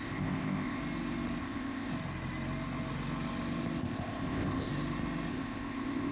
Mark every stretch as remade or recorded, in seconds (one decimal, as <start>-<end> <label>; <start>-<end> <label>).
0.0-0.8 remade; 0.8-1.4 recorded; 1.4-1.9 remade; 1.9-3.8 recorded; 3.8-4.7 remade; 4.7-5.3 recorded; 5.3-6.1 remade